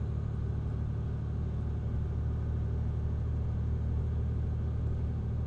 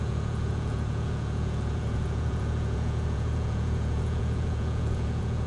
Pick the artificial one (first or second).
second